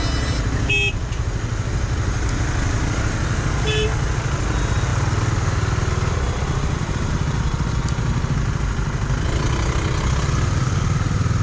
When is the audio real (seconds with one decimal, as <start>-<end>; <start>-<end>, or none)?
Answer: 0.0-11.4